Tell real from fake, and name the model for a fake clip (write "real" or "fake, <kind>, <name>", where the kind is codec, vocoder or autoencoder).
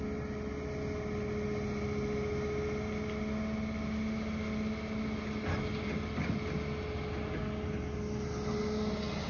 real